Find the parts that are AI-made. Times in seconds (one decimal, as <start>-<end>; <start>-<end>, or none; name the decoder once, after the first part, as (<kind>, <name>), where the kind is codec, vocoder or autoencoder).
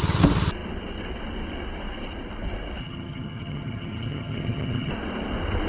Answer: 2.8-4.9 (vocoder, HiFi-GAN)